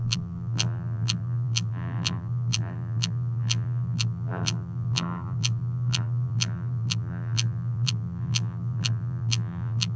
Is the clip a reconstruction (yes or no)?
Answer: yes